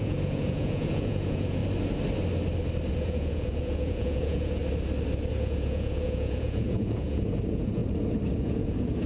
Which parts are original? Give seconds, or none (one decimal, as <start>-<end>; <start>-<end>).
1.6-2.9; 4.6-5.3; 7.8-8.4